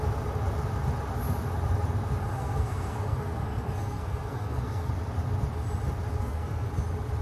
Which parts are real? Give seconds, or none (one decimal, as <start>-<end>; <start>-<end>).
0.0-2.3; 4.9-6.1; 6.7-7.2